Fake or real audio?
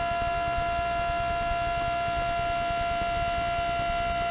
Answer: real